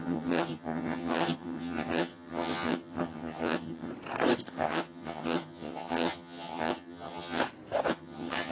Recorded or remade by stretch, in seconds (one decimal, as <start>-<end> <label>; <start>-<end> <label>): 0.0-3.9 remade; 3.9-4.5 recorded; 4.5-7.4 remade; 7.4-7.9 recorded; 7.9-8.5 remade